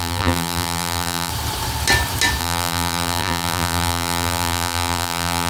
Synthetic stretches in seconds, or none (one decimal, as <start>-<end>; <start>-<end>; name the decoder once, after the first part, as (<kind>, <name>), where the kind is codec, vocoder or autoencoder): 0.0-1.3 (vocoder, BigVGAN v2); 2.4-5.5